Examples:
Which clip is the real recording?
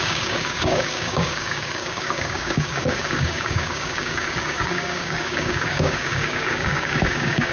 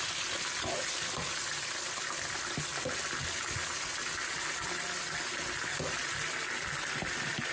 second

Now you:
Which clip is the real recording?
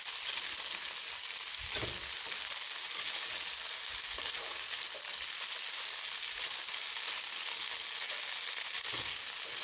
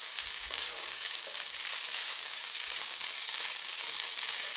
first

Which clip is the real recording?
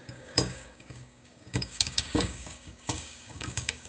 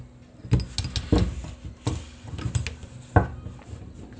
second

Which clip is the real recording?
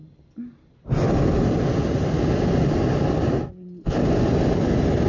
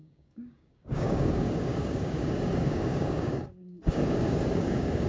first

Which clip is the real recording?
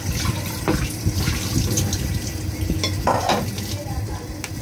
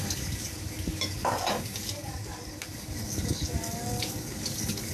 first